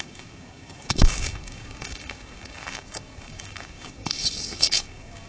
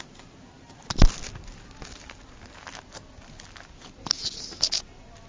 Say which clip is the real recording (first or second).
second